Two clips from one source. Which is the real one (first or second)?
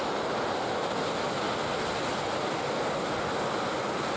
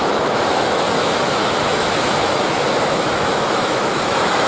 first